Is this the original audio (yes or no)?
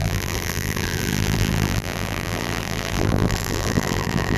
no